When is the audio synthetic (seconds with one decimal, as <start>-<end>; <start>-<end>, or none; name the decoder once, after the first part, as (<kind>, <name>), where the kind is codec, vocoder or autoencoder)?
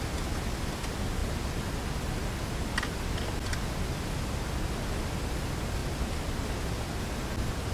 none